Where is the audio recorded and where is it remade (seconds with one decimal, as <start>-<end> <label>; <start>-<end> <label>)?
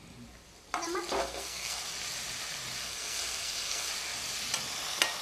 0.0-1.2 recorded; 1.2-1.8 remade; 1.8-2.8 recorded; 2.8-3.9 remade; 3.9-5.2 recorded